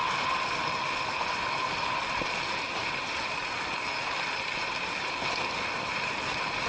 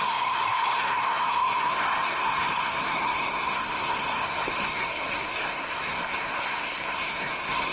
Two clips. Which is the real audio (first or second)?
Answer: first